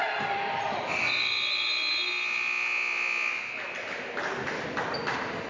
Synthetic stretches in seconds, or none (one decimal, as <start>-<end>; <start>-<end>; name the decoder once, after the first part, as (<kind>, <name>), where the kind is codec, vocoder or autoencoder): none